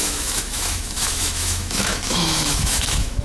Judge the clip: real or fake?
fake